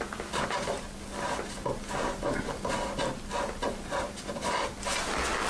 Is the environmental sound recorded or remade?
recorded